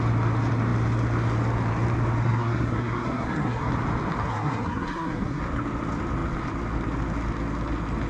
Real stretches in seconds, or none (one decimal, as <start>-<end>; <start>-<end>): 0.0-2.2; 3.7-4.2; 5.4-8.1